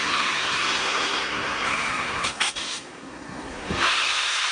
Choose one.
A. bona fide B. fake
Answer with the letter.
B